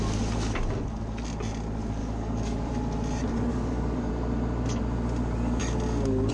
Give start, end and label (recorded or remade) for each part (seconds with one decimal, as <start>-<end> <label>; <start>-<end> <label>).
0.0-2.0 recorded; 2.0-2.7 remade; 2.7-3.5 recorded; 3.5-4.1 remade; 4.1-6.3 recorded